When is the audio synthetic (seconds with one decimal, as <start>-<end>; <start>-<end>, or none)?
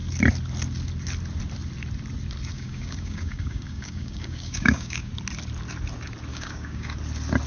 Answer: 2.5-5.1; 6.3-7.0